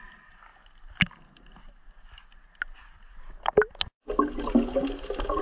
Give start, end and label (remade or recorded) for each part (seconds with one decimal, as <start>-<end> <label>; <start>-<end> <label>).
0.0-5.4 recorded